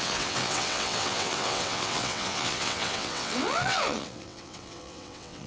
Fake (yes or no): yes